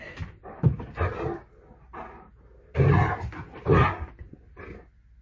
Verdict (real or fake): real